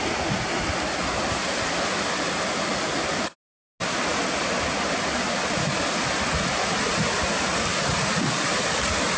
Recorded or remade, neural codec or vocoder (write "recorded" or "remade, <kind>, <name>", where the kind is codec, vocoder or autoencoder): recorded